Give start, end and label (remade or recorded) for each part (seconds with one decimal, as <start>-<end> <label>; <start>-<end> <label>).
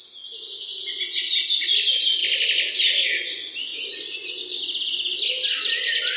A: 0.0-6.2 recorded